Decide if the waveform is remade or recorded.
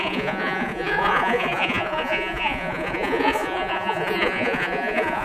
remade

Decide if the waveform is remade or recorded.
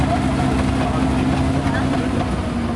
recorded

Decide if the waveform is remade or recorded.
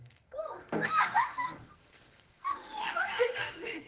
remade